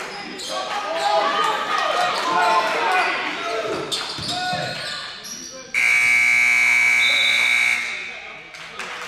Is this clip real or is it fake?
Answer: real